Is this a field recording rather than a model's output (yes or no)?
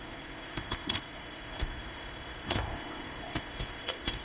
no